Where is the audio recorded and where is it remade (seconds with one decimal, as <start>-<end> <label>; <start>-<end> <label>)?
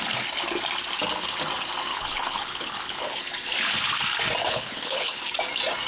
0.0-1.9 recorded; 1.9-3.2 remade; 3.2-4.4 recorded; 4.4-5.2 remade; 5.2-5.9 recorded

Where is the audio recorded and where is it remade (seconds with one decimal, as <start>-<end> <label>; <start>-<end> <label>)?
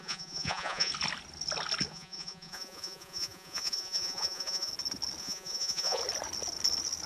0.0-0.9 remade; 0.9-1.9 recorded; 1.9-4.7 remade; 4.7-5.2 recorded; 5.2-6.0 remade; 6.0-7.1 recorded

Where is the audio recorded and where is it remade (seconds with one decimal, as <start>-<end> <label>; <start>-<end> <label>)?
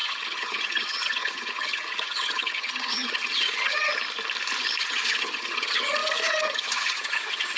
0.0-3.9 remade; 3.9-4.8 recorded; 4.8-7.6 remade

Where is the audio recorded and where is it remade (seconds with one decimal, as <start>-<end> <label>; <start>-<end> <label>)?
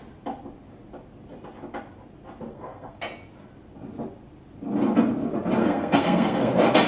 0.0-2.5 recorded; 2.5-3.0 remade; 3.0-5.6 recorded; 5.6-6.5 remade; 6.5-6.9 recorded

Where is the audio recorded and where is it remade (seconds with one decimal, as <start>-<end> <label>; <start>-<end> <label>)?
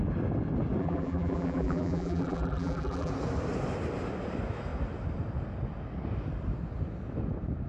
0.0-0.8 recorded; 0.8-3.1 remade; 3.1-7.7 recorded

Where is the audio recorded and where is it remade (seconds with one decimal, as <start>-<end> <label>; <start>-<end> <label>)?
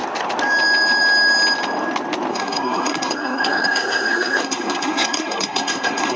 0.0-2.3 recorded; 2.3-6.2 remade